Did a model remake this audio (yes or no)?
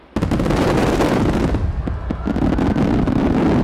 no